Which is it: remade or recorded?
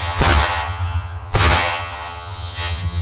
remade